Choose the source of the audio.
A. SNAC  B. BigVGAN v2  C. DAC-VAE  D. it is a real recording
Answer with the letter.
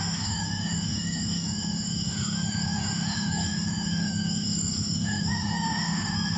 C